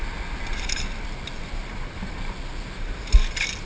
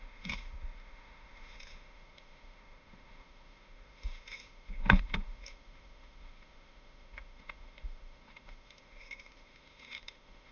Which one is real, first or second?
first